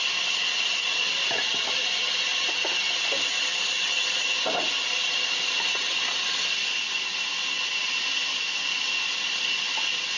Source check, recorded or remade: recorded